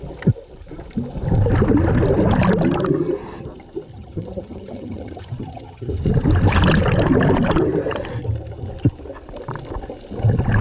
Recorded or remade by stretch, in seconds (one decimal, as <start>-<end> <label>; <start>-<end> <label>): 0.0-3.9 recorded; 3.9-5.9 remade; 5.9-10.6 recorded